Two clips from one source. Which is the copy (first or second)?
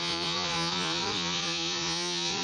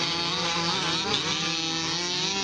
first